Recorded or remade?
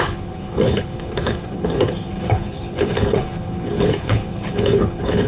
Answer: remade